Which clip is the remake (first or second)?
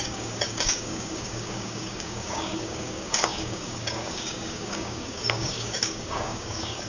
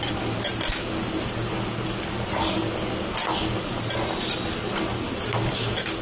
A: first